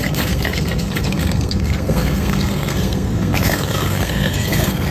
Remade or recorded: remade